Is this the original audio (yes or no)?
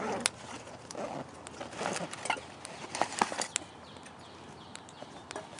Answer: yes